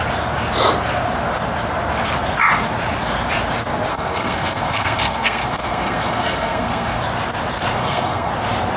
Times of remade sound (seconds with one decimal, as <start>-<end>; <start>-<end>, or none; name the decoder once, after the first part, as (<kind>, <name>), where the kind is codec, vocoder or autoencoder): 3.9-7.0 (codec, SNAC); 7.8-8.3